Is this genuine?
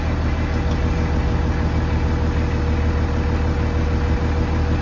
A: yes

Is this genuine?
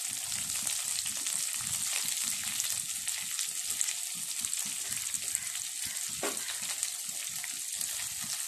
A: yes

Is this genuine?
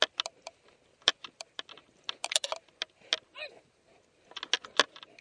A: yes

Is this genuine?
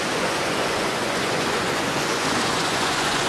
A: no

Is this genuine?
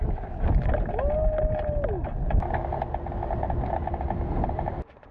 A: yes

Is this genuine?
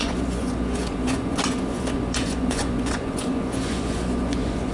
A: no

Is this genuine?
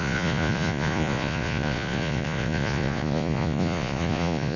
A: no